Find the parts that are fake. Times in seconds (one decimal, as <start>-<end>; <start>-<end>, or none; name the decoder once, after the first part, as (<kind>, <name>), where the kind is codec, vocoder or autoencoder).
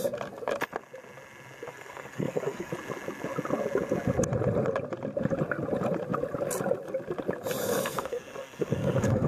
1.7-2.7 (codec, SNAC); 7.6-9.3